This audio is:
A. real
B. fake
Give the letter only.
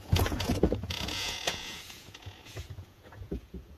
B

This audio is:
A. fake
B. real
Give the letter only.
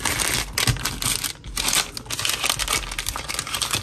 B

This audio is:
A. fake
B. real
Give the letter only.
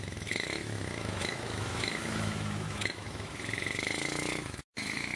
A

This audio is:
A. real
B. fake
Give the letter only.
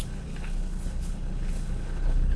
B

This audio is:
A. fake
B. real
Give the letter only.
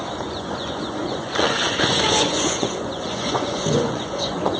A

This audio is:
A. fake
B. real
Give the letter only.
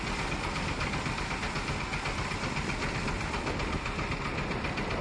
B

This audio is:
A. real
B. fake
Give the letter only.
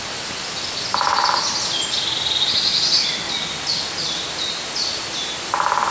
A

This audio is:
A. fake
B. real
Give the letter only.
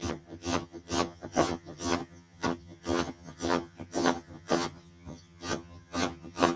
A